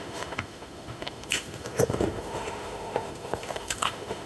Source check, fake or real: fake